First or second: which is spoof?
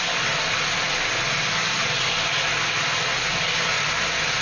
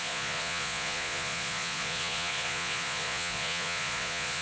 second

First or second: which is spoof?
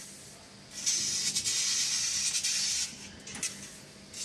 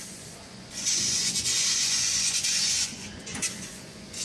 second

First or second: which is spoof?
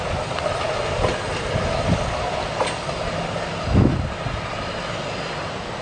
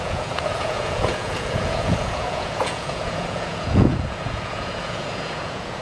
second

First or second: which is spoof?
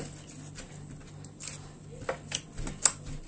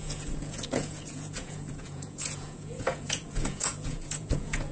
second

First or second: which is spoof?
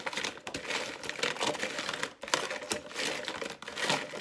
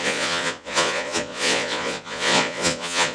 second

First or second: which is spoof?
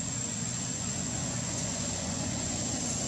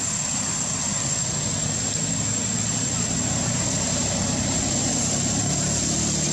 first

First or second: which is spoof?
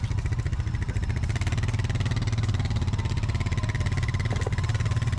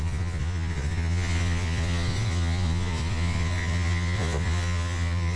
second